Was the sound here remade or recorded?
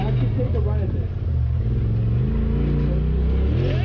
recorded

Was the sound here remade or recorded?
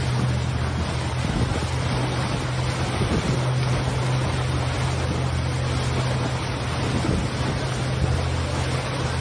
recorded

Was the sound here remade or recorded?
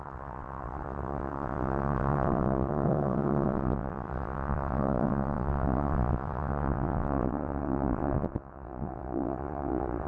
remade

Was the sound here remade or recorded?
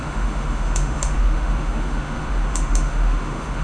remade